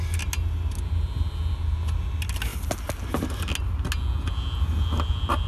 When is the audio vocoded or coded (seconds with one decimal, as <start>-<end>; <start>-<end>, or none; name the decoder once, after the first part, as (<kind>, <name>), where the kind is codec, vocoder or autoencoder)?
none